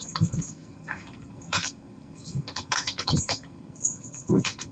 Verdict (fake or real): fake